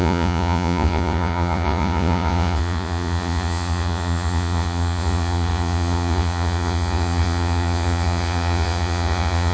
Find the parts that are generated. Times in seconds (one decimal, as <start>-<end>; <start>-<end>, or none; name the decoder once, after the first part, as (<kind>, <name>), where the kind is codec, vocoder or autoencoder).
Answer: 0.0-9.5 (vocoder, Vocos)